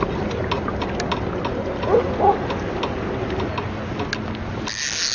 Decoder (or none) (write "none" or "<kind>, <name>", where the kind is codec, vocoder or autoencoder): none